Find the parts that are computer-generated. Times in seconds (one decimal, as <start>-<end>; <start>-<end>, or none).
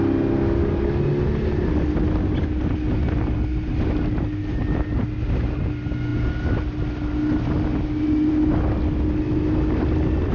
none